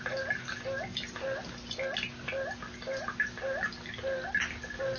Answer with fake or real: real